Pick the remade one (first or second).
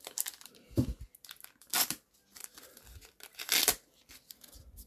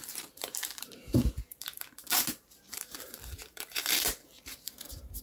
second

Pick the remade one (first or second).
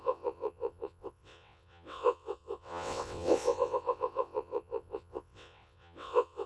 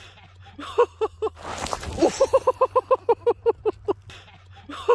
first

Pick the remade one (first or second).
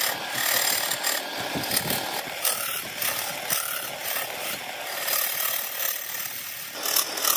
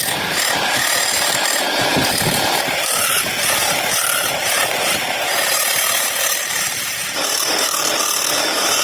second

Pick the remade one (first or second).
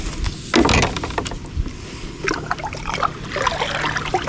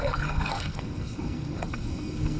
second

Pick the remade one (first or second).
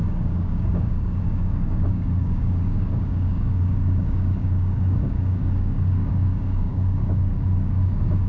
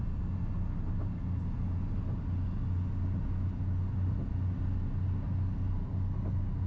first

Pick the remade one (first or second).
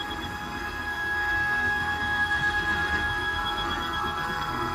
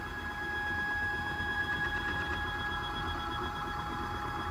first